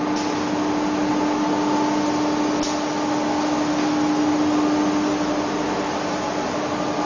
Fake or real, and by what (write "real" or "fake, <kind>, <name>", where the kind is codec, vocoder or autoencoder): real